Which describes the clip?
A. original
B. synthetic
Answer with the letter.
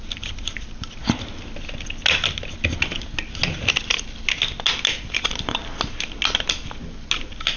A